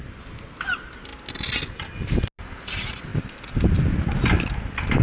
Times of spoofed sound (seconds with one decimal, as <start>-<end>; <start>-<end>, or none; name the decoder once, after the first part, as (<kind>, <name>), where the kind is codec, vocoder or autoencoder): 3.1-3.7 (vocoder, BigVGAN v2)